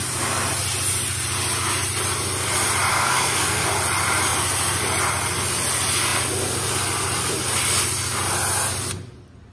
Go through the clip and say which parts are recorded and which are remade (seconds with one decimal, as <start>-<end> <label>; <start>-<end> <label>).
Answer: 0.0-2.9 recorded; 2.9-3.7 remade; 3.7-9.5 recorded